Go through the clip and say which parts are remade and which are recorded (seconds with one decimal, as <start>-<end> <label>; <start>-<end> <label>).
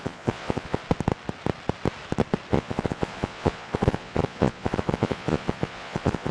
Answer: 0.0-0.8 remade; 0.8-2.5 recorded; 2.5-6.3 remade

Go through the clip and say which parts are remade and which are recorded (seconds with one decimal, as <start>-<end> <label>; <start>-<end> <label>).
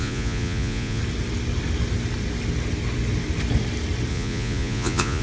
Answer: 0.0-1.0 remade; 1.0-4.1 recorded; 4.1-5.2 remade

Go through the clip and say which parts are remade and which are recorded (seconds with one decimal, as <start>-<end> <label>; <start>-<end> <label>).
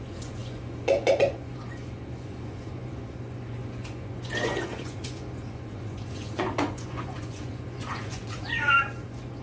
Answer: 0.0-9.4 remade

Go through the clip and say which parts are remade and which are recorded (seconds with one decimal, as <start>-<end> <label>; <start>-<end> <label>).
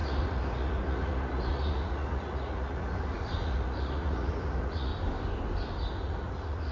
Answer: 0.0-4.9 remade; 4.9-6.0 recorded; 6.0-6.7 remade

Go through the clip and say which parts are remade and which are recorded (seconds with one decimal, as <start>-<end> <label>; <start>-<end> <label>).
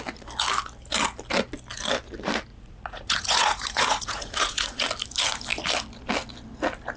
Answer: 0.0-2.5 recorded; 2.5-4.8 remade; 4.8-7.0 recorded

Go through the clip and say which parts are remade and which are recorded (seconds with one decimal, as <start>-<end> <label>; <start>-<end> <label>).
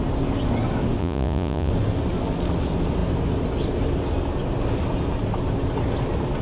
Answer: 0.0-1.0 recorded; 1.0-1.7 remade; 1.7-6.4 recorded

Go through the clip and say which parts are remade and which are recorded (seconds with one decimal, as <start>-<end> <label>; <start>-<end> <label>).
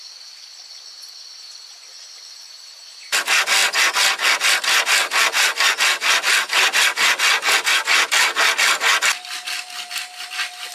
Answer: 0.0-10.7 recorded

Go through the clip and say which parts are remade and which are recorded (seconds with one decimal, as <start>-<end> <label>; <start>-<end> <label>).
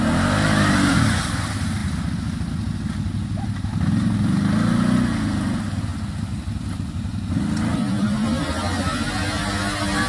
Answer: 0.0-10.1 recorded